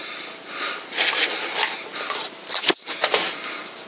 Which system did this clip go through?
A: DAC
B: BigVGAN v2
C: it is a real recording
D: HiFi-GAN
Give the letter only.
C